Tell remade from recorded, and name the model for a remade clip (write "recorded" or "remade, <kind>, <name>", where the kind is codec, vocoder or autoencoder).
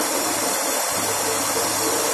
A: recorded